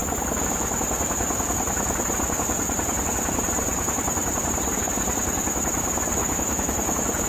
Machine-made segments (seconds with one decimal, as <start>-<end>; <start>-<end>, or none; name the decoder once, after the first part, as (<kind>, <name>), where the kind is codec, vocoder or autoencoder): 6.2-7.3 (autoencoder, DAC-VAE)